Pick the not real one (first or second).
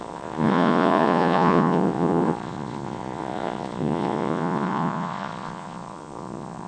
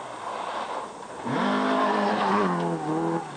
first